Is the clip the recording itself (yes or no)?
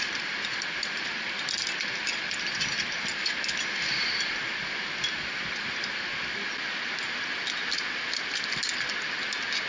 yes